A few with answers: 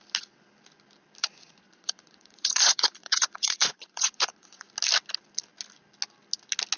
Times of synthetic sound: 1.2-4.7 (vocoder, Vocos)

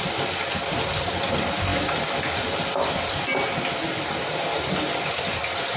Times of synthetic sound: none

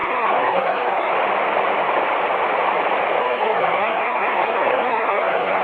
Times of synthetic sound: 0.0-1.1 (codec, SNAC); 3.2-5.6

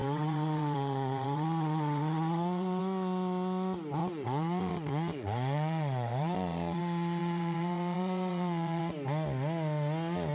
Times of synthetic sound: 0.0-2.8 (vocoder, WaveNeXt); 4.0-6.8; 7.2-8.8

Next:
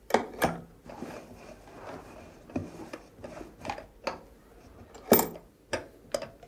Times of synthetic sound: none